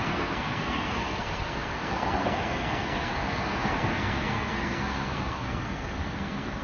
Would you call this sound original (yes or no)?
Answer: no